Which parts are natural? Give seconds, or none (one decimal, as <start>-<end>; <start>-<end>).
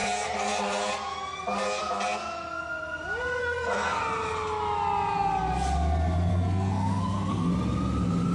0.0-3.4; 4.0-6.3; 7.5-8.3